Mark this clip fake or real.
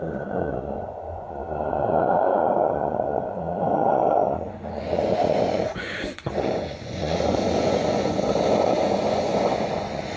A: fake